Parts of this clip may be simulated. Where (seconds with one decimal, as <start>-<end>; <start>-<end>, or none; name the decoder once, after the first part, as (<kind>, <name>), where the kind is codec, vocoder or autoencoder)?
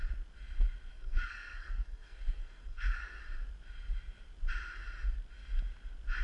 0.9-3.2 (codec, SNAC)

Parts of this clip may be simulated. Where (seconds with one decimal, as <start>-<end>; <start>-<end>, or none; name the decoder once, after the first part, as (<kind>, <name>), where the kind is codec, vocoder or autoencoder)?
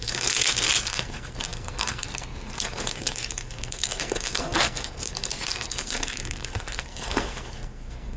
0.0-8.2 (codec, SNAC)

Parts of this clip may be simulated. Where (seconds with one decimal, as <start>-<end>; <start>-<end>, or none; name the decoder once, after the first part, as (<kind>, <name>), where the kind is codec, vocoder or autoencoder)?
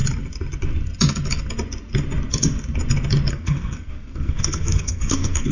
3.3-5.5 (codec, SNAC)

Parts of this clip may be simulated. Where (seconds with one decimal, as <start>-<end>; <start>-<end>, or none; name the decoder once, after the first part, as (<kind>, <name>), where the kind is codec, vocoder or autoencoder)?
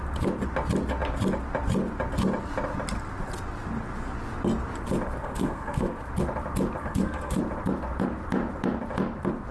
5.2-6.1 (codec, SNAC); 6.8-7.4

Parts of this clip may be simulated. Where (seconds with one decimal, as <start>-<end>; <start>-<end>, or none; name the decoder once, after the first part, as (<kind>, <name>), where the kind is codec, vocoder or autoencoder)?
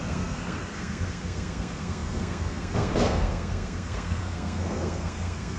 0.0-5.6 (codec, SNAC)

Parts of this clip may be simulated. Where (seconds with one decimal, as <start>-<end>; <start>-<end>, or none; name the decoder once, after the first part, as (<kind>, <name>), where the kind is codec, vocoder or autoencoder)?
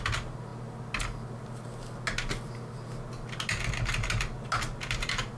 none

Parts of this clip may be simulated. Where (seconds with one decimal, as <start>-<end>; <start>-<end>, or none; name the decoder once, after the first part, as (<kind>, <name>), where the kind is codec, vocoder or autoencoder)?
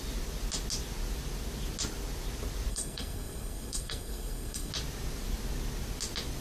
2.7-4.7 (codec, SNAC)